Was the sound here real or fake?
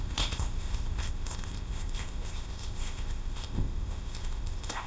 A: fake